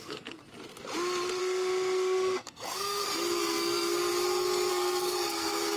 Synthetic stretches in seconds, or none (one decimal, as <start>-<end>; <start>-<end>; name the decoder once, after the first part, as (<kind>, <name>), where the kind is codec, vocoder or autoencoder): 0.0-0.4 (codec, SNAC); 1.4-4.1; 4.7-5.8